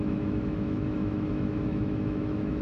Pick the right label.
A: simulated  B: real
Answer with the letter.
A